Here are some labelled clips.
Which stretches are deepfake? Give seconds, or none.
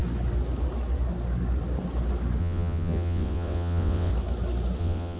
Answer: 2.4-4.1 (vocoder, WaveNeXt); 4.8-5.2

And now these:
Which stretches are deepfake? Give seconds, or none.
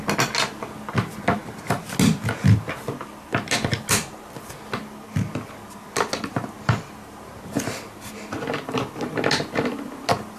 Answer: none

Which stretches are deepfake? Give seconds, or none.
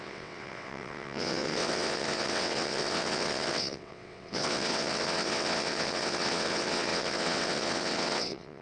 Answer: 0.0-8.6 (vocoder, WaveNeXt)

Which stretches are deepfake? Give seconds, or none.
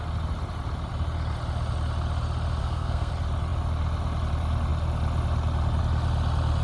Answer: 2.6-3.1 (codec, SNAC)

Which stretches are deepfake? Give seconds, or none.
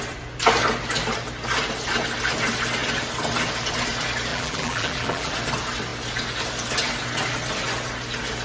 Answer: 4.3-5.3 (vocoder, BigVGAN v2)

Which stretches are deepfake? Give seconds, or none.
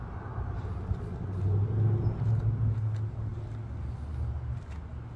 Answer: none